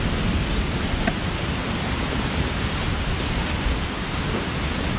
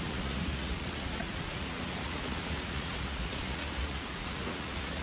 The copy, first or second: second